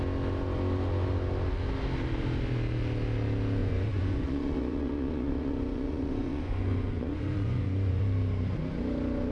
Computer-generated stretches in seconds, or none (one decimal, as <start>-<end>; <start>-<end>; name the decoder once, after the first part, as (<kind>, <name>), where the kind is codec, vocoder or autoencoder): 3.6-8.0 (vocoder, Vocos)